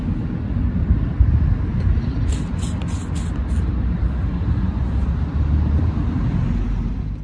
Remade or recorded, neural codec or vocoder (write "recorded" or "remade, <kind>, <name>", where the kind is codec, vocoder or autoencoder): recorded